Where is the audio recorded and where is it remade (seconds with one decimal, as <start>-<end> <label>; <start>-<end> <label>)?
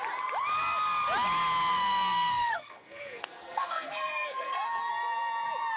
0.0-1.7 recorded; 1.7-4.9 remade; 4.9-5.8 recorded